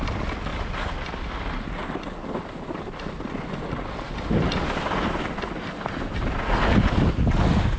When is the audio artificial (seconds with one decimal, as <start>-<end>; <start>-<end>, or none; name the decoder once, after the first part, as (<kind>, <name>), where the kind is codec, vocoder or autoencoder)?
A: none